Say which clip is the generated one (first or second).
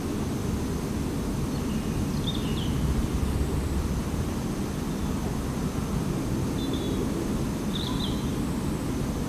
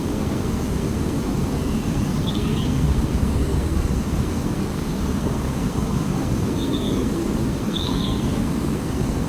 second